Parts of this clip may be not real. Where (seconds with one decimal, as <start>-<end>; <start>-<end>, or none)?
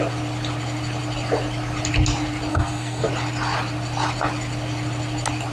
2.5-3.1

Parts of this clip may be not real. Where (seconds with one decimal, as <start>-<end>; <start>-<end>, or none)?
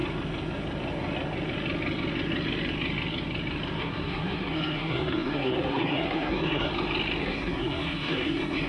3.8-6.7; 7.2-8.7